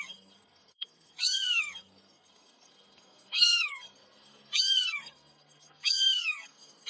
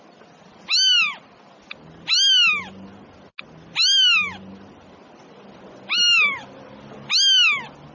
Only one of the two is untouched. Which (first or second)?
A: second